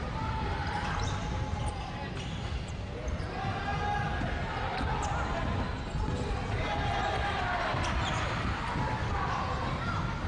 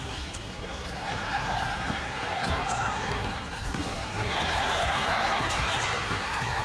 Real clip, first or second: first